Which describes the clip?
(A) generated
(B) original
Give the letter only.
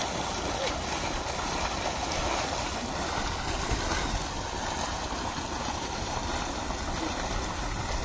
B